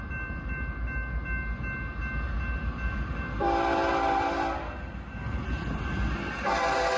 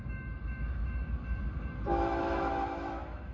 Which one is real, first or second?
first